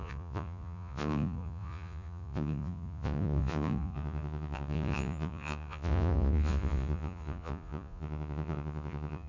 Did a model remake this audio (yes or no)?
yes